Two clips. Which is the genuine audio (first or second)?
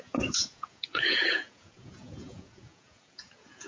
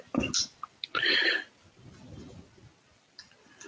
second